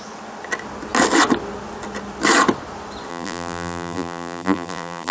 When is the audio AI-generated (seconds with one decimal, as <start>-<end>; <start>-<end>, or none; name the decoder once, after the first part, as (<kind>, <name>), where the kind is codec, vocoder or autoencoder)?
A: 3.1-5.1 (vocoder, BigVGAN v2)